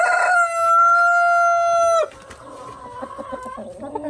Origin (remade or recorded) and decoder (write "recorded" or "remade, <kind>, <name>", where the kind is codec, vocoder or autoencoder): recorded